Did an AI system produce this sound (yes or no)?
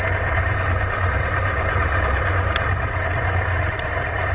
no